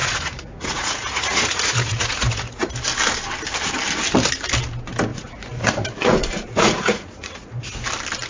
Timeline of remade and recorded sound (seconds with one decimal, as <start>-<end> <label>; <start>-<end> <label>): 0.0-2.7 remade; 2.7-5.1 recorded; 5.1-7.6 remade; 7.6-8.3 recorded